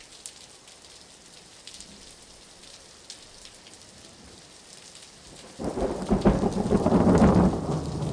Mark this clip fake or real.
real